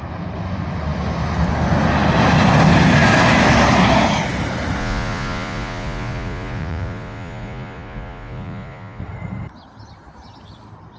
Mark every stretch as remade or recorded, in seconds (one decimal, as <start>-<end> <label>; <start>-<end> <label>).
0.0-4.8 recorded; 4.8-9.0 remade; 9.0-11.0 recorded